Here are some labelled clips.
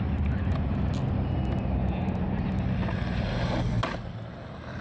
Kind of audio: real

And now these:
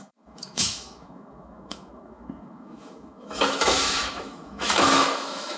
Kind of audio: fake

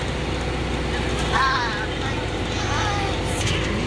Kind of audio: real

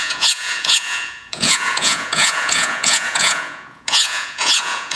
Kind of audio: fake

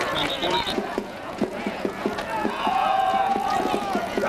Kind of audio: fake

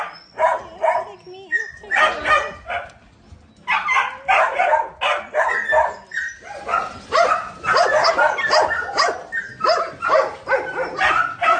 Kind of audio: real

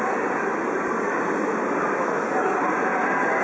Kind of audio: real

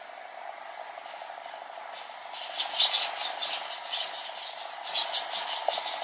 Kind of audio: real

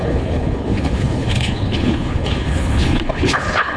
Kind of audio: fake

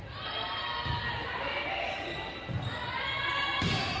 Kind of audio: real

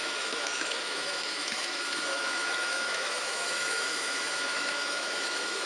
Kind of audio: fake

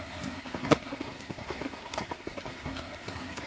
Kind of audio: fake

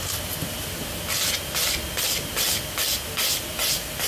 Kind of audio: real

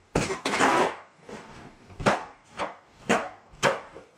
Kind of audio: fake